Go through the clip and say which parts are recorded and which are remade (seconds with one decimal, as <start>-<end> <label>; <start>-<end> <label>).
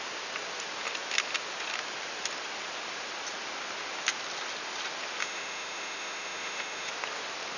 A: 0.0-5.2 recorded; 5.2-6.9 remade; 6.9-7.6 recorded